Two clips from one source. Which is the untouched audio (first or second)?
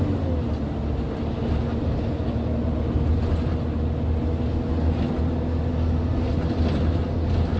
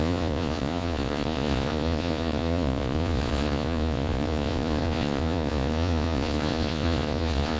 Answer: first